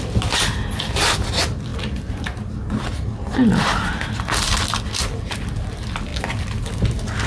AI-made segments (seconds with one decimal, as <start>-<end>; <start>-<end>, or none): none